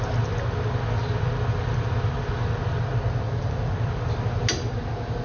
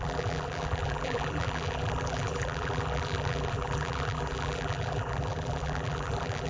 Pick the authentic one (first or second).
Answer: first